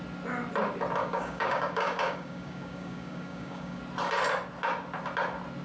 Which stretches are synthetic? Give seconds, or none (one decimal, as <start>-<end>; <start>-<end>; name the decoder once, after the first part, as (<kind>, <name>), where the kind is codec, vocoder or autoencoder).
1.0-3.8 (codec, DAC)